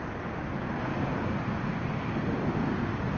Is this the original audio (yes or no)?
yes